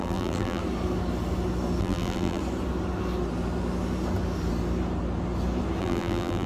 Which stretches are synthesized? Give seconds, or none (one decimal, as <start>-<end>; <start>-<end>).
0.0-0.6; 1.8-2.4; 5.8-6.5